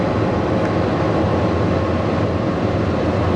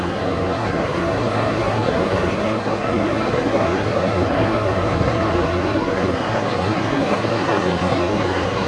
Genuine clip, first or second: first